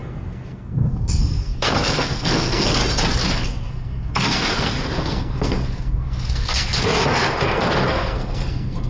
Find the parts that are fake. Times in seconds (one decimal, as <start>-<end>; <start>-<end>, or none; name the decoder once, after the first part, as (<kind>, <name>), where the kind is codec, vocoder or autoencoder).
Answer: 0.0-2.8 (codec, SNAC); 3.3-8.9